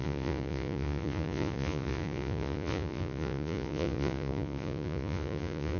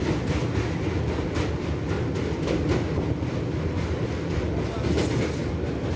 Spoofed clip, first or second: first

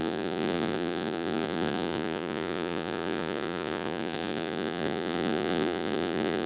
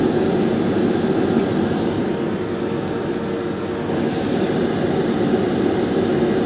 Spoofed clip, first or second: first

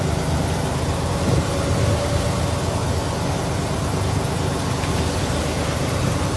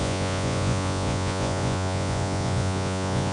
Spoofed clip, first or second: second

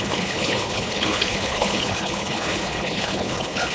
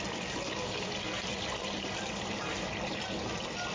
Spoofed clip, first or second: first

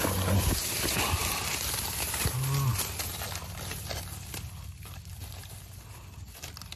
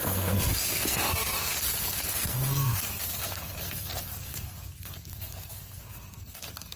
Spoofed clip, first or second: second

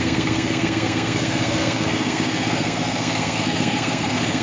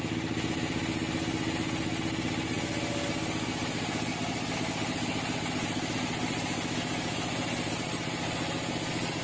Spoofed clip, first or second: first